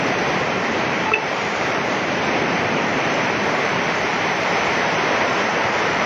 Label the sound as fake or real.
fake